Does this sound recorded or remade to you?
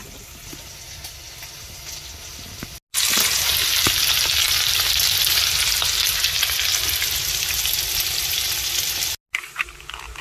recorded